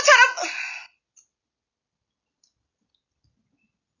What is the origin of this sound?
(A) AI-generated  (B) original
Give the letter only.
B